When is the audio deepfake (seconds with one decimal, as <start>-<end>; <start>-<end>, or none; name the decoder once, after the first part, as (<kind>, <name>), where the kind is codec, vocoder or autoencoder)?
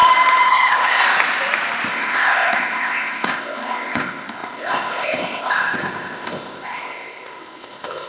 0.5-1.0 (codec, ZipCodec); 1.9-8.1